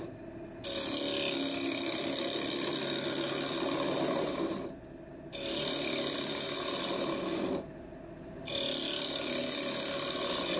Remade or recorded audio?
recorded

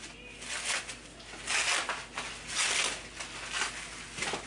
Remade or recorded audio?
recorded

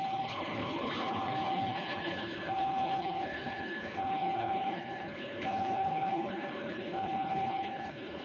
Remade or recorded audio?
remade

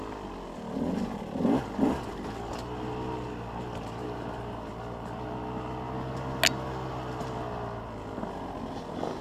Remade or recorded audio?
recorded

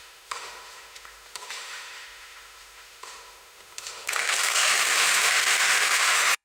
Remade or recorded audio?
remade